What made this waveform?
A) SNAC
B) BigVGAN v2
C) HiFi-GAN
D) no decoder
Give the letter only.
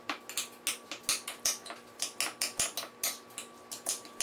D